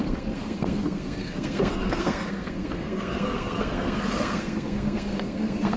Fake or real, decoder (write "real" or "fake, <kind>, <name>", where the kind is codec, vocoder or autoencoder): fake, codec, SNAC